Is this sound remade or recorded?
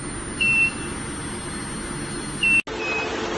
recorded